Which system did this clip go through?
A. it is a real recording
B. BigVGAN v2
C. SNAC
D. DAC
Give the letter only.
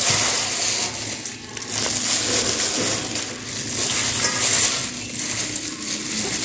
A